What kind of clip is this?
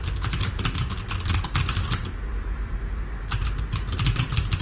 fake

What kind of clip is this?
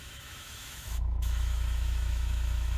fake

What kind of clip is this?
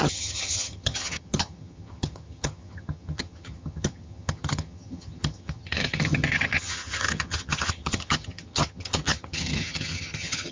fake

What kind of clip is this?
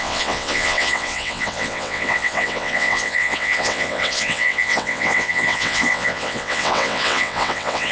fake